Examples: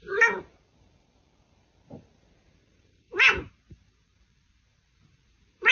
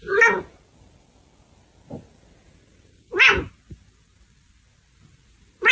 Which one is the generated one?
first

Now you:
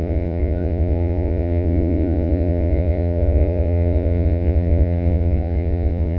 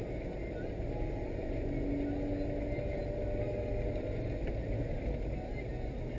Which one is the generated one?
first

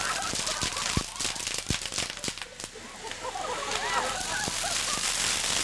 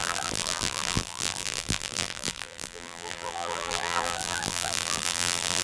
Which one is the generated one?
second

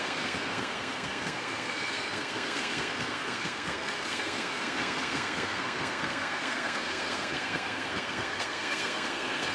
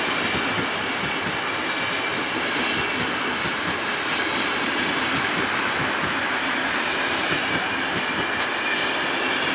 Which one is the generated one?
first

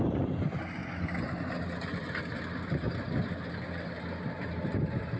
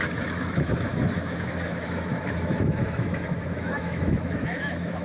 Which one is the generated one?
second